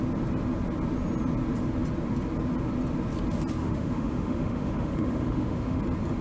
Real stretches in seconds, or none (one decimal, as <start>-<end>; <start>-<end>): 0.0-3.6; 5.8-6.2